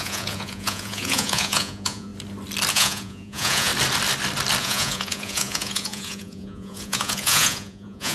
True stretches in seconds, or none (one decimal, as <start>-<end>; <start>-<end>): 2.1-2.7; 3.7-4.6